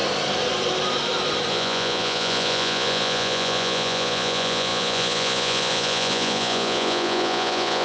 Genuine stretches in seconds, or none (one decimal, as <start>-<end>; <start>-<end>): 0.0-1.5